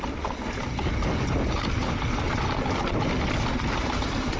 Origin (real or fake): real